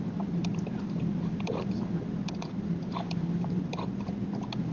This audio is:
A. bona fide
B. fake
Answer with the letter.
A